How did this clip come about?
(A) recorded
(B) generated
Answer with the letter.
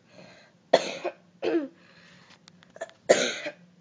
A